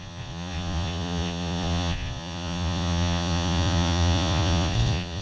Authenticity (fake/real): fake